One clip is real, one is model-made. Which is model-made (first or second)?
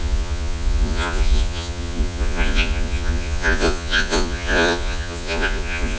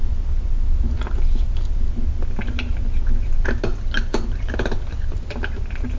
first